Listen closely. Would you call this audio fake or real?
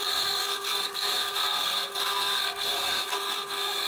fake